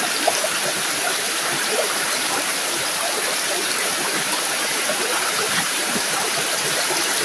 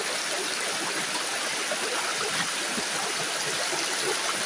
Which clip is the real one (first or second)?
second